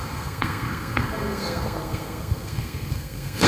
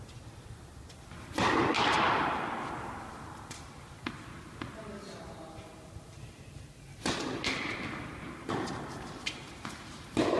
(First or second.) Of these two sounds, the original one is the second